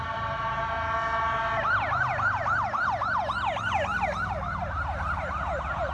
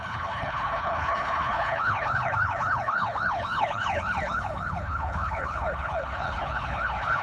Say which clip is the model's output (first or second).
second